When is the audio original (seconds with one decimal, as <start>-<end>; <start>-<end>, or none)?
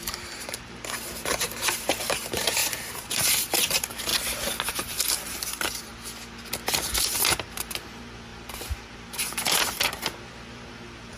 4.1-4.7; 5.9-6.9